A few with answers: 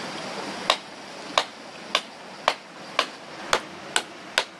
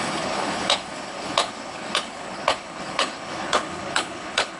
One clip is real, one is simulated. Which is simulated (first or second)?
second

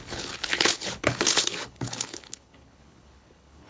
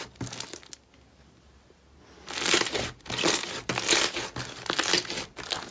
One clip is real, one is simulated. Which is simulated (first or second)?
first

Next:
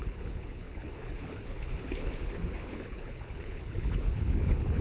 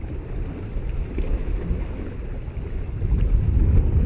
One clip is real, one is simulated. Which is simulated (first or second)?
first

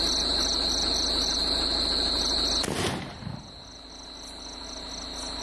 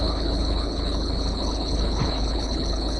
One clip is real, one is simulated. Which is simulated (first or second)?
second